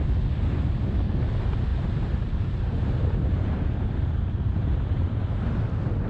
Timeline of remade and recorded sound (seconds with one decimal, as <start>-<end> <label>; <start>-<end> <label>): 0.0-1.7 recorded; 1.7-5.4 remade; 5.4-6.1 recorded